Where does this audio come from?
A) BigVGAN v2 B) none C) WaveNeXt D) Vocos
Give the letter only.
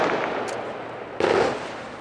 B